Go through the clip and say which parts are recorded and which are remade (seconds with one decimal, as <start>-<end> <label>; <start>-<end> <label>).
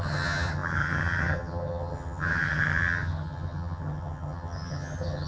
0.0-5.3 remade